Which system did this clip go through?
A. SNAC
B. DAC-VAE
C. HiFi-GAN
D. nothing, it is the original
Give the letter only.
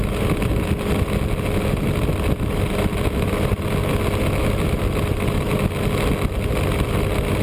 D